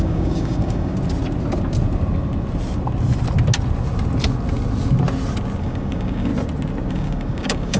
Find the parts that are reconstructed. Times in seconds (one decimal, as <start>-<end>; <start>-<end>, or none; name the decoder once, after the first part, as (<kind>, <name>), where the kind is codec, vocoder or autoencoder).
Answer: 0.0-0.9 (codec, DAC); 5.6-6.3; 6.9-7.8